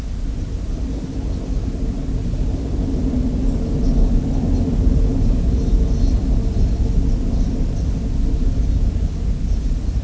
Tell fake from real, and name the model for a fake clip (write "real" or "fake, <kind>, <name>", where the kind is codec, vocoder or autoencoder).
real